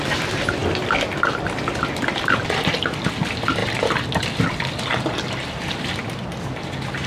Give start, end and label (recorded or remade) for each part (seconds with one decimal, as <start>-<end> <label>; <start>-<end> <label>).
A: 0.0-7.1 recorded